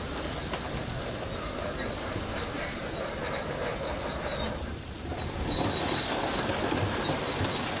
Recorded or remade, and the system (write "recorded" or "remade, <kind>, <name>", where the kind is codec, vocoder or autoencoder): recorded